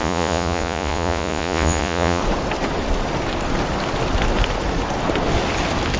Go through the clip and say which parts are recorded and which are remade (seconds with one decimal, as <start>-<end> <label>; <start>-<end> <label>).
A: 0.0-2.2 remade; 2.2-6.0 recorded

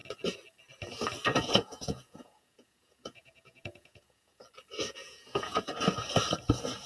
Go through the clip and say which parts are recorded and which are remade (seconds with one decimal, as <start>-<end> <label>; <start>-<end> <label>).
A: 0.0-1.4 recorded; 1.4-4.4 remade; 4.4-5.0 recorded; 5.0-5.6 remade; 5.6-6.9 recorded

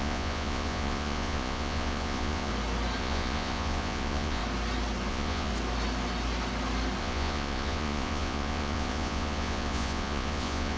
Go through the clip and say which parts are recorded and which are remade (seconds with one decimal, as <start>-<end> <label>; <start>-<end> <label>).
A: 0.0-2.5 remade; 2.5-3.0 recorded; 3.0-4.4 remade; 4.4-5.1 recorded; 5.1-5.5 remade; 5.5-7.0 recorded; 7.0-10.8 remade

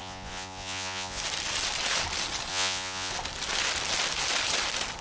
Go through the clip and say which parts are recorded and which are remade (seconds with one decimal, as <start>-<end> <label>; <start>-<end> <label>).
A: 0.0-1.2 remade; 1.2-2.5 recorded; 2.5-3.1 remade; 3.1-5.0 recorded

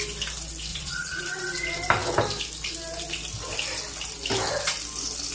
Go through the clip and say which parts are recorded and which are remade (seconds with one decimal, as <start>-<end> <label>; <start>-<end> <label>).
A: 0.0-0.7 recorded; 0.7-1.2 remade; 1.2-5.3 recorded

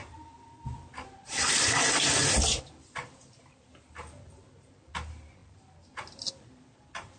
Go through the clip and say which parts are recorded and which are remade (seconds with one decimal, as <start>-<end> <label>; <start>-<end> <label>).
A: 0.0-7.2 recorded